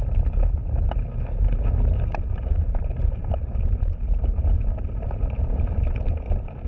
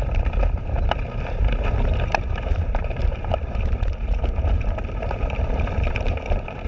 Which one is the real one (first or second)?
first